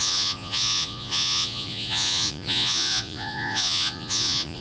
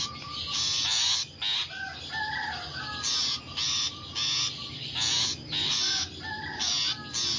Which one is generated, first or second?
first